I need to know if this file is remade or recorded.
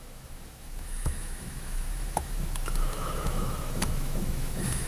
remade